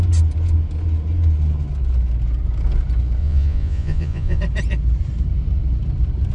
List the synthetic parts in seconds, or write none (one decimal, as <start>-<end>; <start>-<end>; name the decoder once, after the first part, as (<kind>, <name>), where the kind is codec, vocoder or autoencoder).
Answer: 3.2-4.4 (vocoder, Vocos)